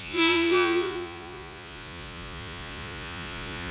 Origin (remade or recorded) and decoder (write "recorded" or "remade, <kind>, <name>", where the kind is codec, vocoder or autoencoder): remade, vocoder, Vocos